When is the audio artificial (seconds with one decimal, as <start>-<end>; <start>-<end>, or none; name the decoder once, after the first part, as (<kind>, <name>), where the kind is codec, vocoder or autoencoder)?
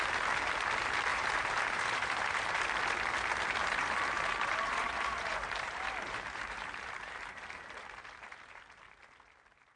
1.1-2.6 (vocoder, BigVGAN v2); 3.6-8.6